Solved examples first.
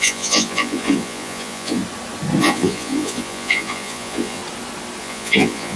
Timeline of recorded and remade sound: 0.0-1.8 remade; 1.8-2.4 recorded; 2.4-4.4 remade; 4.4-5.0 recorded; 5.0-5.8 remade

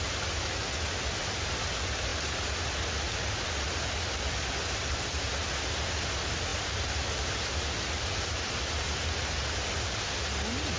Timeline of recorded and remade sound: 0.0-10.8 recorded

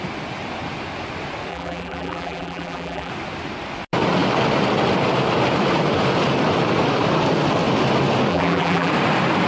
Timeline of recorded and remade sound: 0.0-1.5 recorded; 1.5-3.1 remade; 3.1-8.3 recorded; 8.3-8.9 remade; 8.9-9.5 recorded

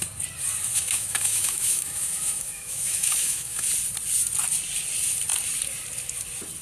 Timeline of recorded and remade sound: 0.0-0.7 recorded; 0.7-3.7 remade; 3.7-6.6 recorded

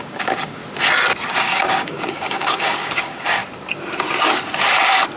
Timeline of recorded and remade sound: 0.0-0.6 remade; 0.6-1.3 recorded; 1.3-3.4 remade; 3.4-5.2 recorded

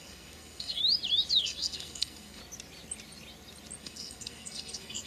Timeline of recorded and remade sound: 0.0-0.8 remade; 0.8-1.4 recorded; 1.4-2.4 remade; 2.4-3.8 recorded; 3.8-5.1 remade